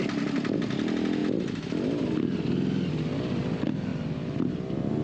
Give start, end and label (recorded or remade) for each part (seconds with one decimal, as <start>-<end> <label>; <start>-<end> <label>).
0.0-5.0 recorded